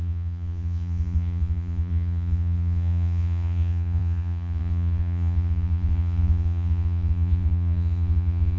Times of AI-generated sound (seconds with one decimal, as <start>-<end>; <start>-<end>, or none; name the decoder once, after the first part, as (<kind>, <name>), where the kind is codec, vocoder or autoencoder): 0.0-8.6 (vocoder, Vocos)